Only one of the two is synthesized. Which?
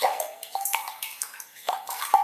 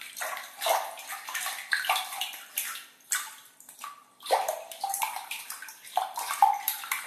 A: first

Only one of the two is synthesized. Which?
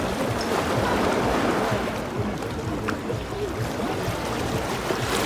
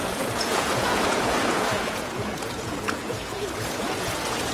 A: second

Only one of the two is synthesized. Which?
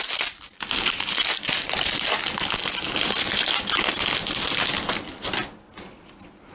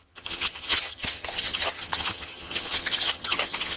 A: second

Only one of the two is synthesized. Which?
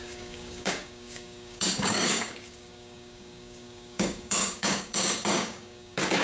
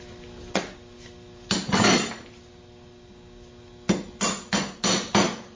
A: first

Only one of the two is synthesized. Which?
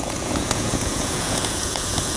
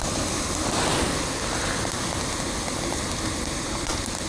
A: first